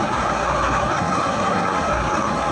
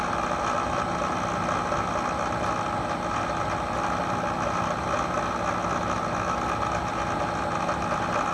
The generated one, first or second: first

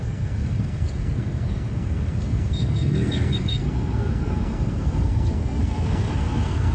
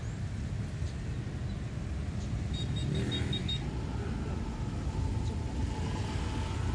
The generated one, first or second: first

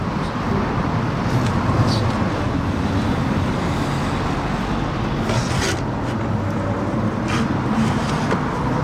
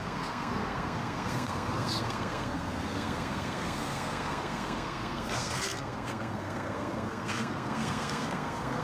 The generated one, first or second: second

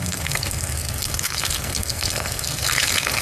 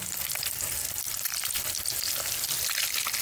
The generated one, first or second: first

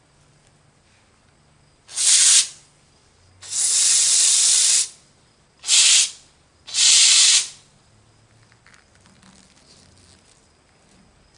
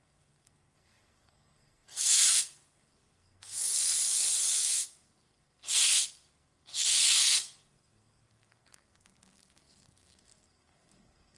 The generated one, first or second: second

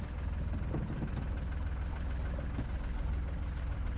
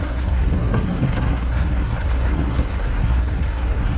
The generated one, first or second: second